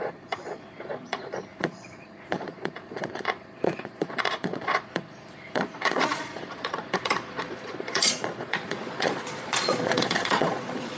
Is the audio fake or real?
fake